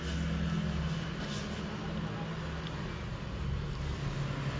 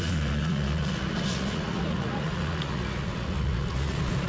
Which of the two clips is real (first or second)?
first